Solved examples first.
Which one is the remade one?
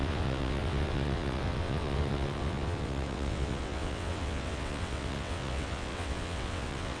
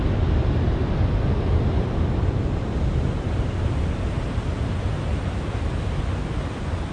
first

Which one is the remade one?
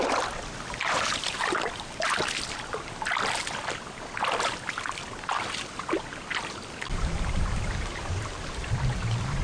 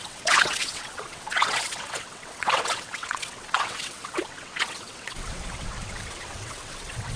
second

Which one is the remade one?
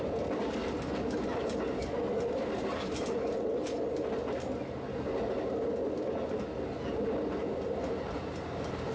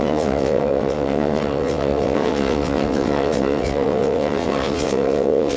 second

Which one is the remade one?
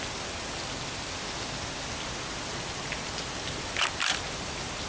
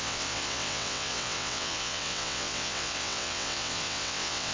second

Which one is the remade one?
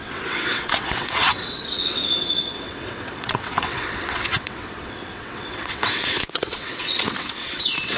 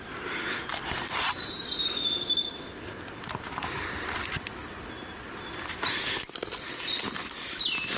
first